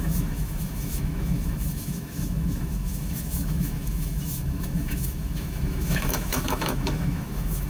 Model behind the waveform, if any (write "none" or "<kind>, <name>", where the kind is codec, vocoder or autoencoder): autoencoder, DAC-VAE